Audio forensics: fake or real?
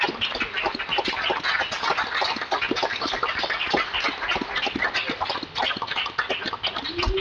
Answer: real